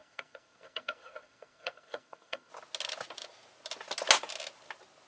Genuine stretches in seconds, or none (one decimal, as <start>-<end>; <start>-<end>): 2.5-5.1